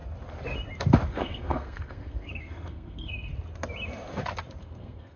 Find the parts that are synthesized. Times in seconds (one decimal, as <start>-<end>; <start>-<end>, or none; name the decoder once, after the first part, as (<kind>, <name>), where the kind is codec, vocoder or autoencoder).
1.1-3.3 (codec, SNAC); 4.6-5.2